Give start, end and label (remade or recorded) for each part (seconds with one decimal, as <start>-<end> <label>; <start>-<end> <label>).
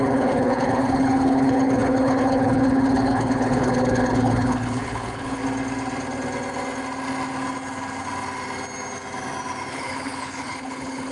0.0-5.4 remade; 5.4-9.7 recorded; 9.7-11.1 remade